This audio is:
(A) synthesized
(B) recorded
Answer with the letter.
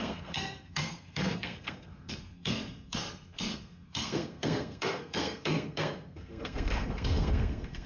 A